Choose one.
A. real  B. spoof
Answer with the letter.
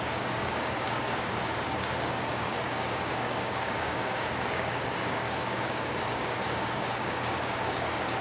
B